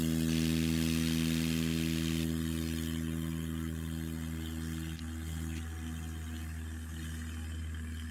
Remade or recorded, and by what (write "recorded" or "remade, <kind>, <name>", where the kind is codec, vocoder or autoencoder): recorded